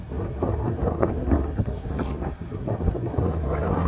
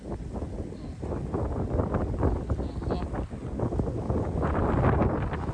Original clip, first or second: second